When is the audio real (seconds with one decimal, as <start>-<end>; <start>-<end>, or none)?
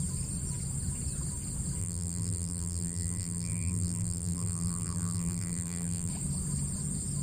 0.0-1.8; 6.1-7.2